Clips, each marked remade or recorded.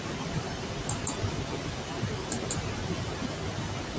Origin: recorded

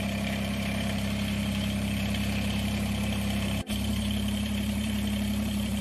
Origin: remade